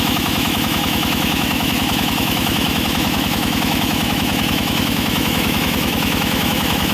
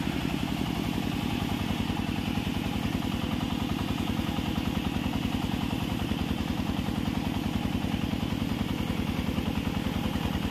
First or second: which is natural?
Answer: second